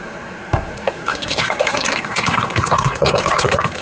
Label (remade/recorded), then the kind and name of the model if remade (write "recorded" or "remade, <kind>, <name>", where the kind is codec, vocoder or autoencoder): remade, codec, SNAC